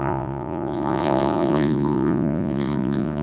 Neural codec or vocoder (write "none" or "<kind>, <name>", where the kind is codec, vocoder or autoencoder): vocoder, Vocos